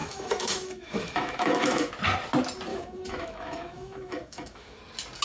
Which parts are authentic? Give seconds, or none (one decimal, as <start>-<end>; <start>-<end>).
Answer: 1.9-2.7; 4.8-5.2